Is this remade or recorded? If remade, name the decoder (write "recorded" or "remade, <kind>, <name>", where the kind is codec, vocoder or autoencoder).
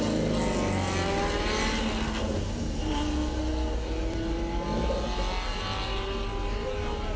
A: recorded